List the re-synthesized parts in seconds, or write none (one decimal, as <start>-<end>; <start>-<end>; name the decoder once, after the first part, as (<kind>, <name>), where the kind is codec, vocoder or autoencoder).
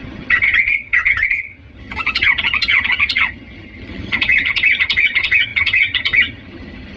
0.0-7.0 (vocoder, HiFi-GAN)